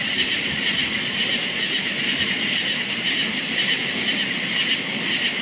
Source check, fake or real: real